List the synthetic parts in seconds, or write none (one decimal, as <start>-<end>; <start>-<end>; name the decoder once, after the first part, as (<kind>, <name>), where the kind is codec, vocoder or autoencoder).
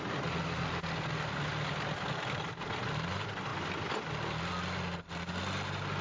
none